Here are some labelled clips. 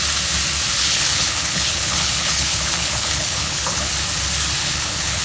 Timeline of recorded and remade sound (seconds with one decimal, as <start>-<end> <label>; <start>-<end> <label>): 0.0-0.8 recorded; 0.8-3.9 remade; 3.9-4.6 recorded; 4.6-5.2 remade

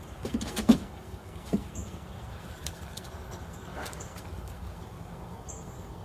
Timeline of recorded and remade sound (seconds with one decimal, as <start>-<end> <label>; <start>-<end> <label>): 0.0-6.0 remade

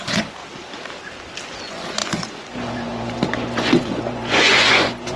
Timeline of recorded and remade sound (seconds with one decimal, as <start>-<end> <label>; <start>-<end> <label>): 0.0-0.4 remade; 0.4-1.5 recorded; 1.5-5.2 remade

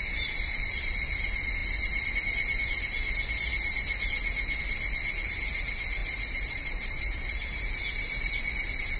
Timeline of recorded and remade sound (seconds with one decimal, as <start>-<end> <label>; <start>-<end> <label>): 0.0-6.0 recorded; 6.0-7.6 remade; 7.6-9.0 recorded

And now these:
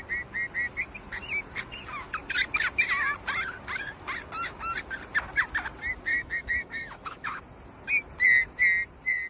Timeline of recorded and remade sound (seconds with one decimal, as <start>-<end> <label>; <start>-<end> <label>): 0.0-6.1 recorded; 6.1-7.4 remade; 7.4-9.3 recorded

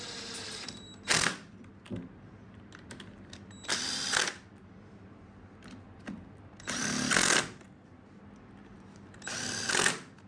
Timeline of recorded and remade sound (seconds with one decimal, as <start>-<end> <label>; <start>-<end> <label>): 0.0-10.3 recorded